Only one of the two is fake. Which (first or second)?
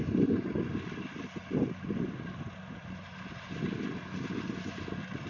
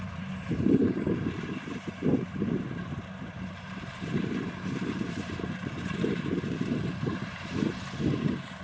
second